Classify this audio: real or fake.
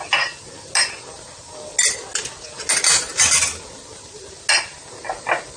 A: real